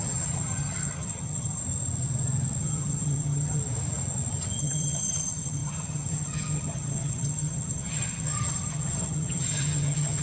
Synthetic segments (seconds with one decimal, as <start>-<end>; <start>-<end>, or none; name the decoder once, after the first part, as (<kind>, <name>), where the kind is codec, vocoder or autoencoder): 0.0-1.6 (vocoder, HiFi-GAN); 2.6-3.6; 4.6-10.2